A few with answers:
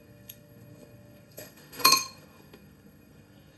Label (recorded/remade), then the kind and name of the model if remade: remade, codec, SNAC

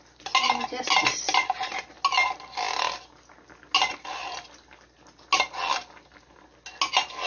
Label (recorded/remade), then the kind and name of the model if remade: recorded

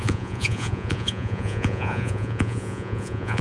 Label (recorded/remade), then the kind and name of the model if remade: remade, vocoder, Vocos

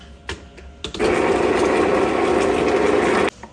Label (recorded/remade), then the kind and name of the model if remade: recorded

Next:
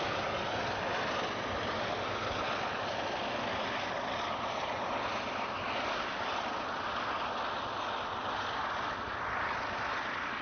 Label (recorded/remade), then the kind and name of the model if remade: recorded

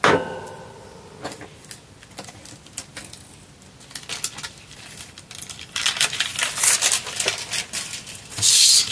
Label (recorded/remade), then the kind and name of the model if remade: recorded